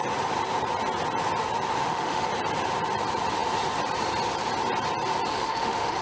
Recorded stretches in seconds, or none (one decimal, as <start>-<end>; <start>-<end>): 0.0-1.8; 2.3-5.3